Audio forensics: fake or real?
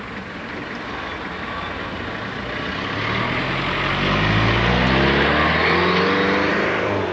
real